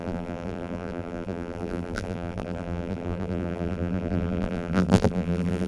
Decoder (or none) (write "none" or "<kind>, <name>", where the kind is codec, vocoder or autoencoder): vocoder, BigVGAN v2